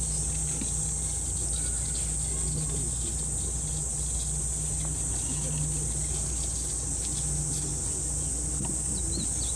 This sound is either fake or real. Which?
real